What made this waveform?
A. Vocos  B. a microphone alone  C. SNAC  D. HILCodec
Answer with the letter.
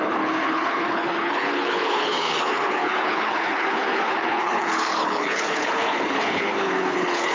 D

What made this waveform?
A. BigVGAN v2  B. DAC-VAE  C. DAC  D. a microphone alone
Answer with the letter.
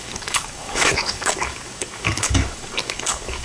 C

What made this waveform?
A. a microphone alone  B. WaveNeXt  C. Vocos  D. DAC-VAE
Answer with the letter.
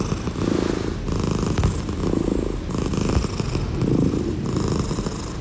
A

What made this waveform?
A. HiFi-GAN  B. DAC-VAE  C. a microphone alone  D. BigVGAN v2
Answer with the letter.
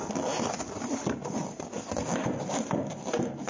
D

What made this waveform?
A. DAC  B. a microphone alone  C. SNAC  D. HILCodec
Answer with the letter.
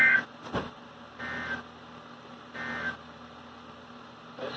B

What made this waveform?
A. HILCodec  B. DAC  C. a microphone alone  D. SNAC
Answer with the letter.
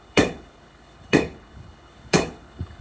A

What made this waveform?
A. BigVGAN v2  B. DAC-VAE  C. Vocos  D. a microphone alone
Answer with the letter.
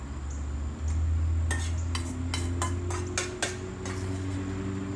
D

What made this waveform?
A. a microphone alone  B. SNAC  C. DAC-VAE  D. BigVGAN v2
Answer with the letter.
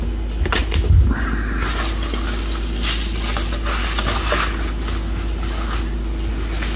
A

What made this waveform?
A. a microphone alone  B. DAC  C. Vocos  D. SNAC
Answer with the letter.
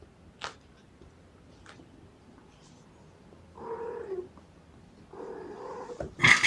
A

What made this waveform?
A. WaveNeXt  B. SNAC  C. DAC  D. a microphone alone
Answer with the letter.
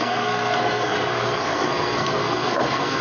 B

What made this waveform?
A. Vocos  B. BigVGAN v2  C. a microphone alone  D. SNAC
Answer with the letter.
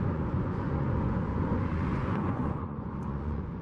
A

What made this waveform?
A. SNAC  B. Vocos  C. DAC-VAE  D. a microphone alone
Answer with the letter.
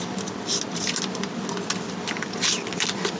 D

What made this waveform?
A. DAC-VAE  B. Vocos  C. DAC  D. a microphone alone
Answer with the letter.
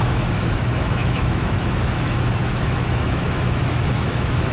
A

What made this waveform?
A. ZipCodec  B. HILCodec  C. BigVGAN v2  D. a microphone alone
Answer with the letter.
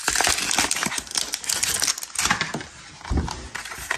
D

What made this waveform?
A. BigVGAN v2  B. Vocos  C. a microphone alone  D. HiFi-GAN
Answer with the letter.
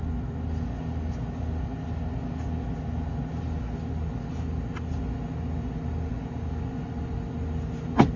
C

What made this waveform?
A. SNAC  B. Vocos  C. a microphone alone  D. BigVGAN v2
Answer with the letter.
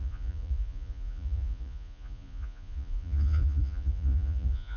B